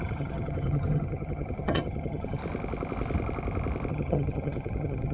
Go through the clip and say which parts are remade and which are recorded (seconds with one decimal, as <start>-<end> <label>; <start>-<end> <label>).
0.0-2.4 remade; 2.4-3.9 recorded; 3.9-5.1 remade